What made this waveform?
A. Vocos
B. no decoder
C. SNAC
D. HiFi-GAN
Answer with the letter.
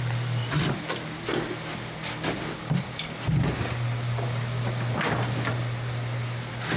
B